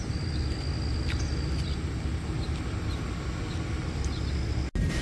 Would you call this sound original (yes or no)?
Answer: yes